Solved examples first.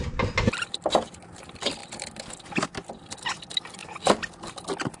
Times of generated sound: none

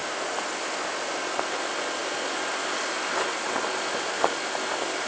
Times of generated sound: none

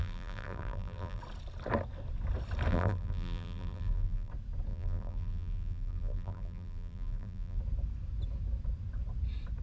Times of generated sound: 0.0-1.2; 2.7-4.3; 4.7-7.6

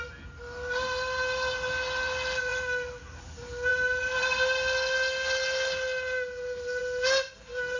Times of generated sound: none

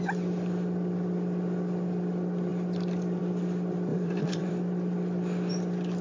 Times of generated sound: 3.9-4.5

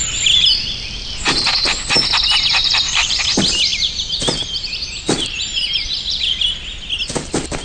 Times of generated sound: 2.6-3.2; 3.7-6.2

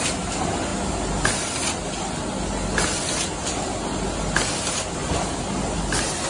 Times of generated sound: 5.0-5.5